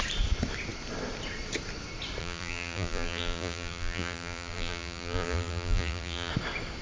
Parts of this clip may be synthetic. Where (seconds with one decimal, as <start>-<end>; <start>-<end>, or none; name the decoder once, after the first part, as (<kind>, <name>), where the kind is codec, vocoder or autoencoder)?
2.2-6.3 (vocoder, BigVGAN v2)